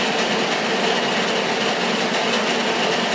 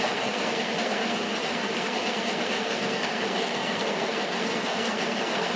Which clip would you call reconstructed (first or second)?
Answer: second